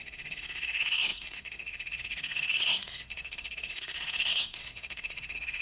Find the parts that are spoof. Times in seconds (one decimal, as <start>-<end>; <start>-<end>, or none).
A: 0.0-5.6